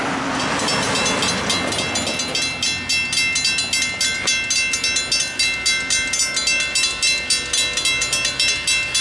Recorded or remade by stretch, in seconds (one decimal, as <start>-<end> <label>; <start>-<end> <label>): 0.0-9.0 recorded